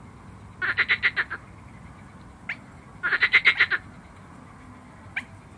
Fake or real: real